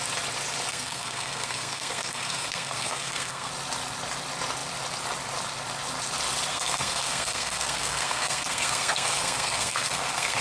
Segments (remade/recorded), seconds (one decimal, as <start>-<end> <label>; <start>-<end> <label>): 0.0-0.7 recorded; 0.7-3.5 remade; 3.5-6.5 recorded; 6.5-10.4 remade